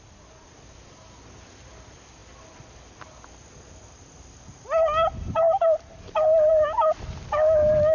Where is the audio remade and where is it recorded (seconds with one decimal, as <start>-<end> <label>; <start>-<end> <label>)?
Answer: 0.0-7.9 recorded